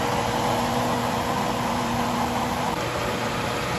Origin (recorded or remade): remade